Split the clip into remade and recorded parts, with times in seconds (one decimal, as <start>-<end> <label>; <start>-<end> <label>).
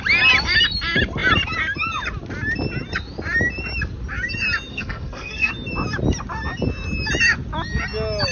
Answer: 0.0-4.7 recorded; 4.7-5.5 remade; 5.5-8.3 recorded